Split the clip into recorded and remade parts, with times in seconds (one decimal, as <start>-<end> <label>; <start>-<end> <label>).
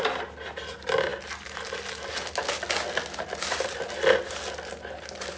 0.0-5.4 recorded